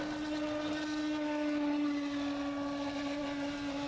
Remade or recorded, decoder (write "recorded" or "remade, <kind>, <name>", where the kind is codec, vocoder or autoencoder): recorded